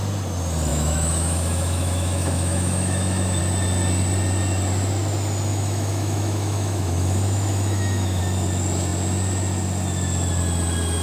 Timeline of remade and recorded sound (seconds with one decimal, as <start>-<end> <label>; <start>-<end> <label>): 0.0-0.7 recorded; 0.7-3.4 remade; 3.4-5.5 recorded; 5.5-8.2 remade; 8.2-11.0 recorded